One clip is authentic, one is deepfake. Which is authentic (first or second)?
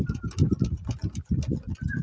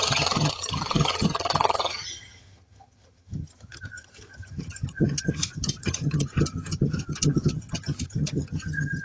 first